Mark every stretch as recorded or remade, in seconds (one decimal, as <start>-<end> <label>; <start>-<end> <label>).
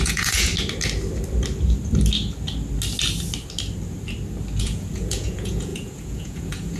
0.0-0.5 remade; 0.5-4.6 recorded; 4.6-6.8 remade